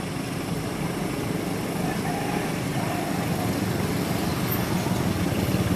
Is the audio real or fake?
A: real